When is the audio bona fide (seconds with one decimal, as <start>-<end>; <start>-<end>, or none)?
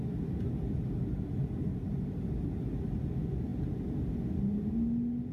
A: 0.0-1.7; 2.8-5.3